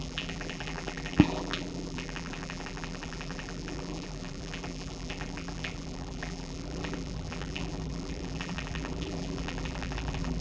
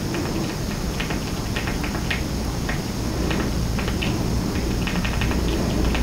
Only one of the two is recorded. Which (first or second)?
second